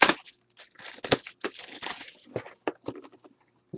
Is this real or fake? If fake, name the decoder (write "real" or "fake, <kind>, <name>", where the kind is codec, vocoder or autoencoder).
real